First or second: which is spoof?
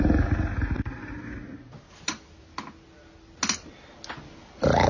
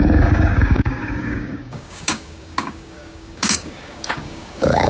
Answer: second